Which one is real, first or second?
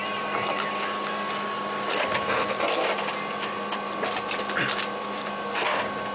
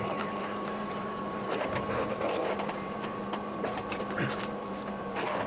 first